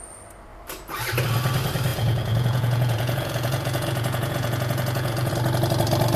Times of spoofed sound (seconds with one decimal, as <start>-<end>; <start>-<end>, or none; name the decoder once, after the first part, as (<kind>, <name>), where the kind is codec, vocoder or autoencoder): 1.9-5.3 (vocoder, Vocos)